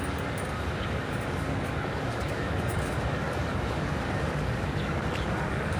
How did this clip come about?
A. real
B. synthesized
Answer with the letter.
B